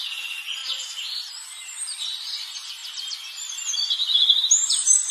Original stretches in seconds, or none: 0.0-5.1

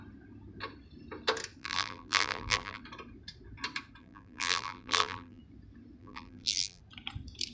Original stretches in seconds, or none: 0.0-1.6; 2.8-4.0; 5.4-6.0; 6.8-7.5

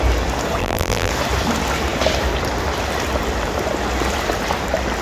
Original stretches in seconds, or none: 0.0-0.6; 1.1-5.0

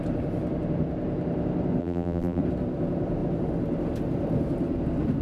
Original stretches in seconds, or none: 0.0-1.8; 2.4-5.2

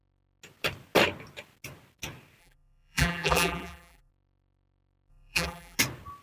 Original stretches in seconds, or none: 0.0-2.4; 4.1-5.1; 5.8-6.2

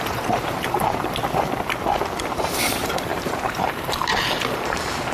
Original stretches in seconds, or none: 1.2-2.3

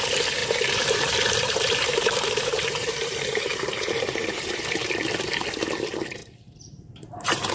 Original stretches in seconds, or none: 0.0-0.4; 4.9-6.2